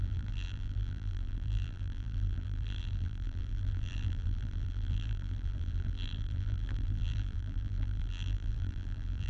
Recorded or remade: remade